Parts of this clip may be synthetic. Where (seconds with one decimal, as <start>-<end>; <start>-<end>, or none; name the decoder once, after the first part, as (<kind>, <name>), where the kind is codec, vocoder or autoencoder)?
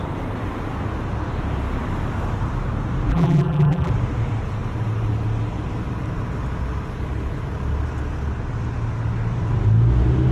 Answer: 3.1-3.9 (vocoder, BigVGAN v2)